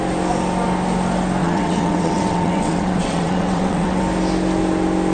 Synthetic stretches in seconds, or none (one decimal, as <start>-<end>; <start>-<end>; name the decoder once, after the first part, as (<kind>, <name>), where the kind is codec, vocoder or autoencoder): 1.4-4.0 (vocoder, WaveNeXt)